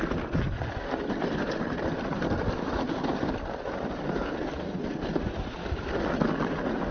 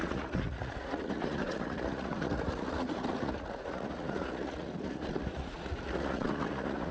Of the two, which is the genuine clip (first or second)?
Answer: first